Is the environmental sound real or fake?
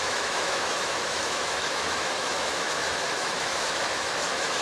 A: fake